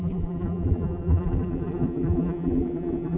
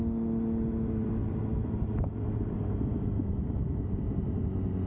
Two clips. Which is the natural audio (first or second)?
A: second